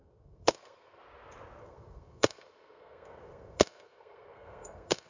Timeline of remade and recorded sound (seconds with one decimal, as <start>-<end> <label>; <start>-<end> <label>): 0.0-1.0 remade; 1.0-1.6 recorded; 1.6-5.1 remade